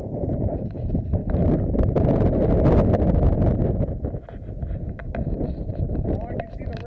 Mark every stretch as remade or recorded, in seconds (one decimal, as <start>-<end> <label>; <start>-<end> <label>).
0.0-1.2 remade; 1.2-5.3 recorded; 5.3-6.9 remade